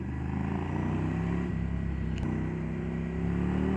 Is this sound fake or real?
real